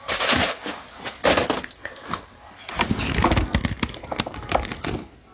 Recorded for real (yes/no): yes